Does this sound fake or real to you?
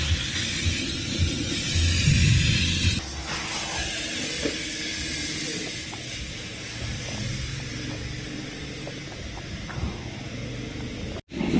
real